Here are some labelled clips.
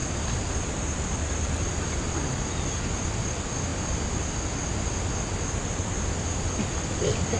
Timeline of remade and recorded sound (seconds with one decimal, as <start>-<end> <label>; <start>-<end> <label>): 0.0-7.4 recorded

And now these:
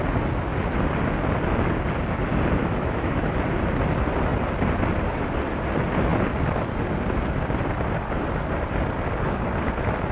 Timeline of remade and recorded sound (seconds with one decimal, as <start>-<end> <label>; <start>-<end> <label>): 0.0-2.6 recorded; 2.6-3.3 remade; 3.3-10.1 recorded

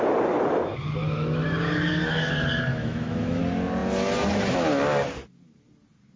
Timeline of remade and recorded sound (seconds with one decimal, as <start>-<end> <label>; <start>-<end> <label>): 0.0-1.0 recorded; 1.0-2.3 remade; 2.3-2.7 recorded; 2.7-3.4 remade; 3.4-6.2 recorded

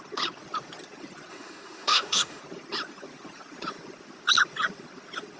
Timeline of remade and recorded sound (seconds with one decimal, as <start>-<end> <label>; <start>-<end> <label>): 0.0-1.3 recorded; 1.3-2.4 remade; 2.4-5.4 recorded

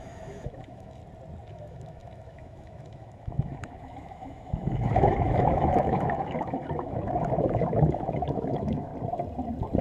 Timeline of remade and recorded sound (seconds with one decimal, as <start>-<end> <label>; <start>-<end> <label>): 0.0-1.0 remade; 1.0-1.5 recorded; 1.5-8.9 remade; 8.9-9.8 recorded